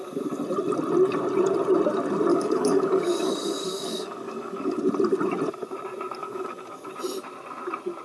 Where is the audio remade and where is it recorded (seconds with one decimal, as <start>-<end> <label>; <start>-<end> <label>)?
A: 0.0-2.3 recorded; 2.3-4.8 remade; 4.8-6.2 recorded; 6.2-6.9 remade; 6.9-8.0 recorded